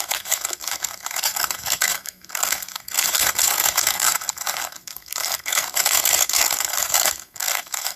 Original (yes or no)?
no